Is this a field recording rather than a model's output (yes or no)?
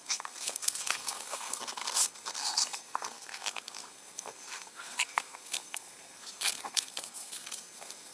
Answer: no